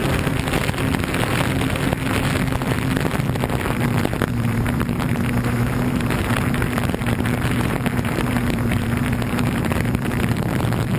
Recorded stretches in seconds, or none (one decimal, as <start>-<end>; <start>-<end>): 0.0-4.3